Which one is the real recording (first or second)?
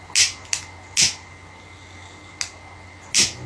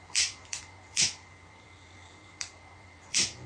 first